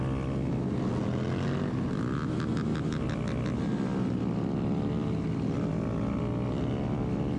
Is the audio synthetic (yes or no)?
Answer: no